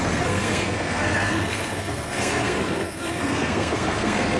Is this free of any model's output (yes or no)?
no